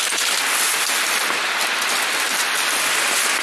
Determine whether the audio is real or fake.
real